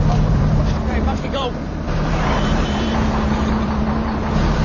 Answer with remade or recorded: remade